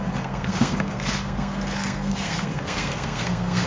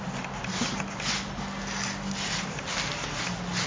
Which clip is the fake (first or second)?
first